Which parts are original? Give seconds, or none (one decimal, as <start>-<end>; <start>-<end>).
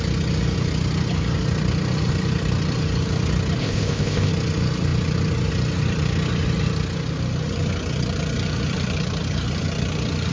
0.0-3.6; 4.3-10.3